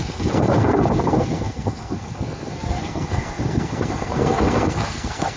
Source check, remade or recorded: remade